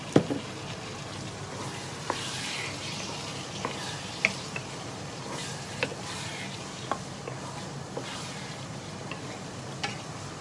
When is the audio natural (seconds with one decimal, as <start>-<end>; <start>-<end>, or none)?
0.0-8.1; 8.8-10.4